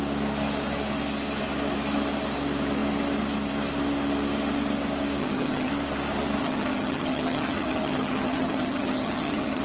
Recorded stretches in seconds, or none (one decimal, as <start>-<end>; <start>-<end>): 0.0-5.2; 5.7-6.4